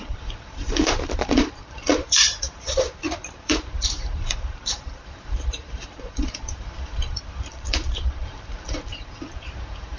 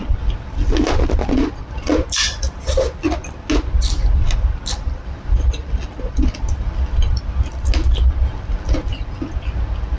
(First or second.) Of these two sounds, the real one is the second